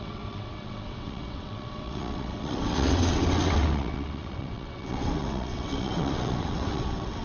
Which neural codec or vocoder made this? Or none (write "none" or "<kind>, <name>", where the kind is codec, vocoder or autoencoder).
vocoder, WaveNeXt